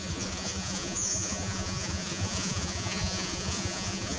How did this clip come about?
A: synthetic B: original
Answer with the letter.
A